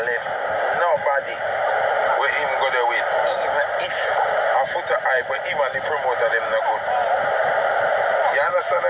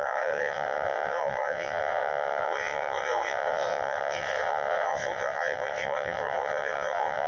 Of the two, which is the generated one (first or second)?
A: second